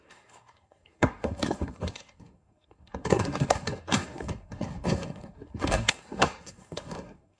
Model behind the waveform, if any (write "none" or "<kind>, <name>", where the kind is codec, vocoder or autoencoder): codec, SNAC